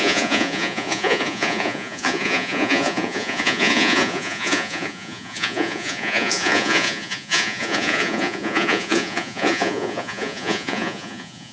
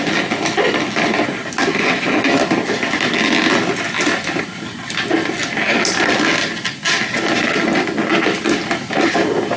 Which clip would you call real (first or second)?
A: second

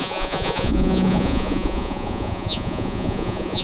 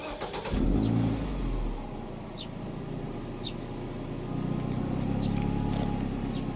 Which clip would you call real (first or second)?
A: second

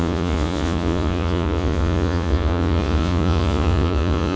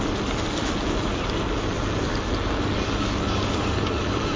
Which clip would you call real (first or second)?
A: second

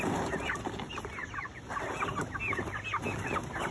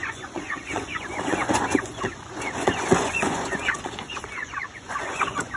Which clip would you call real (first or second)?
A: first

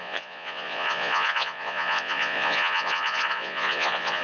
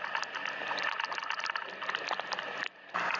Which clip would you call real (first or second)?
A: second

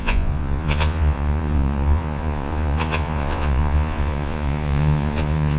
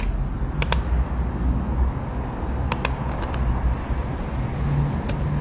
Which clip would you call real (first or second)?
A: second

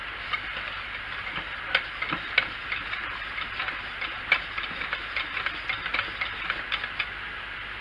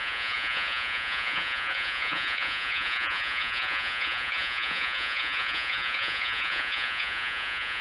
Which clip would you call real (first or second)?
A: first